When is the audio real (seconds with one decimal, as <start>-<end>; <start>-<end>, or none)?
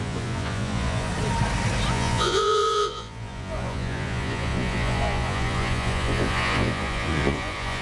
1.1-1.9